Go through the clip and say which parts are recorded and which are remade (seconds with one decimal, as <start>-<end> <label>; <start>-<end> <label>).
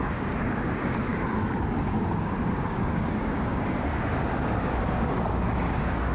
0.0-1.1 remade; 1.1-1.8 recorded; 1.8-6.1 remade